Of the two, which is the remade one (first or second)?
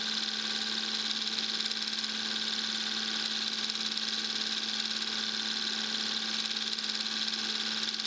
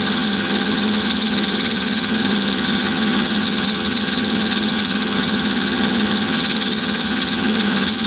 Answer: second